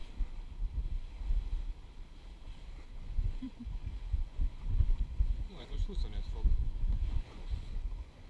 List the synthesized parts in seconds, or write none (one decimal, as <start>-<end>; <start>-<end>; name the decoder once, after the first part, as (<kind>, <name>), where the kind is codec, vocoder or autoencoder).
2.9-6.0 (vocoder, Vocos); 6.6-8.3